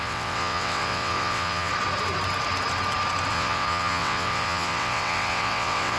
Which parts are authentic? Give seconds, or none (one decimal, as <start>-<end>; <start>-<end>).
1.7-3.3